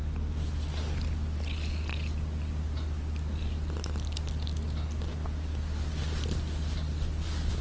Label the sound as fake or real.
real